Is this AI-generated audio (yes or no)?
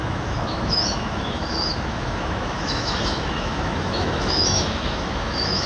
yes